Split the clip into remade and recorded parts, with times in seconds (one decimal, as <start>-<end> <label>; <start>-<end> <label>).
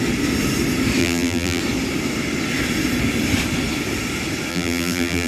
0.0-1.0 recorded; 1.0-1.6 remade; 1.6-4.5 recorded; 4.5-5.3 remade